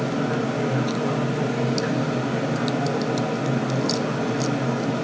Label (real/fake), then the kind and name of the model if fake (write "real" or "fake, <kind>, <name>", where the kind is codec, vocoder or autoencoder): real